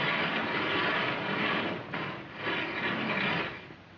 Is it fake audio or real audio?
real